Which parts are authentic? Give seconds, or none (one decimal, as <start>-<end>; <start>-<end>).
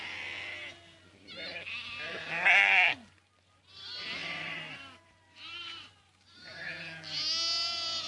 0.0-4.2; 5.9-8.1